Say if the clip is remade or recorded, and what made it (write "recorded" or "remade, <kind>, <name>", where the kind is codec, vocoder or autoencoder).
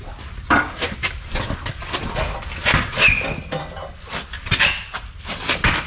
recorded